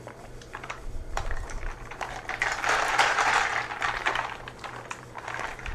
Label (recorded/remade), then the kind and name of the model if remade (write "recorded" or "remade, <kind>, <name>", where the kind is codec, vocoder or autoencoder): remade, vocoder, BigVGAN v2